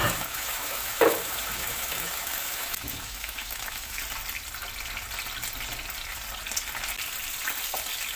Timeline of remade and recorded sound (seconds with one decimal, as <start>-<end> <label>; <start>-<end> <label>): 0.0-4.0 remade; 4.0-8.2 recorded